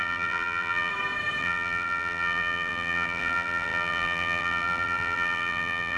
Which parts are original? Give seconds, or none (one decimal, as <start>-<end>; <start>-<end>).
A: 0.9-1.4